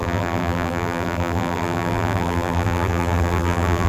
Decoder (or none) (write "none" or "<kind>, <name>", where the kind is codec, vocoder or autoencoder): vocoder, BigVGAN v2